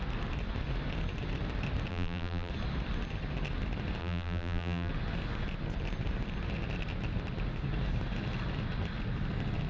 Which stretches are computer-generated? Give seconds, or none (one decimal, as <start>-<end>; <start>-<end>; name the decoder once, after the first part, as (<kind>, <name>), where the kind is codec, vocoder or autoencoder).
1.9-2.5 (vocoder, BigVGAN v2); 4.0-4.9